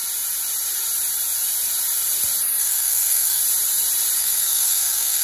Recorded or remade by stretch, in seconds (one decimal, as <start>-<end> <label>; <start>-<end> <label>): 0.0-2.6 recorded; 2.6-3.4 remade; 3.4-4.2 recorded; 4.2-5.2 remade